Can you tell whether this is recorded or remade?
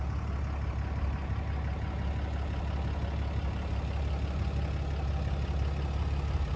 recorded